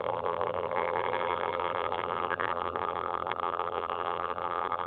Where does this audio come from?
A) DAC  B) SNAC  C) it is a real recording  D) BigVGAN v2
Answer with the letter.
D